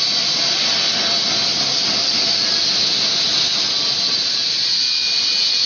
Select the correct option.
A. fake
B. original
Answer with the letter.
B